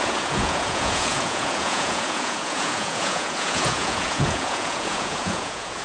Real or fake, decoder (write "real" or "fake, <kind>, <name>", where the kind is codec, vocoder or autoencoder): fake, vocoder, Vocos